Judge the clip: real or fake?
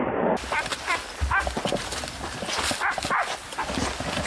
real